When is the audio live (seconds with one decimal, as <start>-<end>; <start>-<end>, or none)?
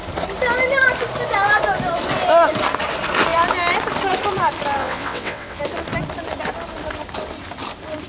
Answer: 0.0-4.8; 5.6-8.1